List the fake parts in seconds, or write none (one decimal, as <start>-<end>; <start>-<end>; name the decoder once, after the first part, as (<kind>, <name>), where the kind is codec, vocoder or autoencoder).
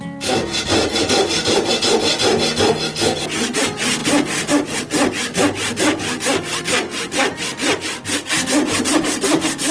none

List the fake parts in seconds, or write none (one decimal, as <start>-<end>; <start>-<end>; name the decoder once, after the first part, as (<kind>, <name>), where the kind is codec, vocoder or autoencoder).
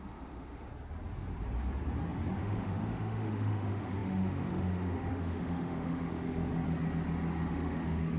0.0-0.7 (autoencoder, DAC-VAE); 2.4-6.5; 7.5-8.2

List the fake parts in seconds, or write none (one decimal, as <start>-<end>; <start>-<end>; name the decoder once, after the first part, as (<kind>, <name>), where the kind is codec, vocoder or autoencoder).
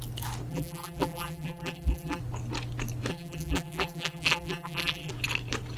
0.5-2.2 (vocoder, BigVGAN v2); 3.1-5.1